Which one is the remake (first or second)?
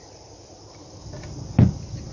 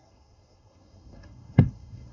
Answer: second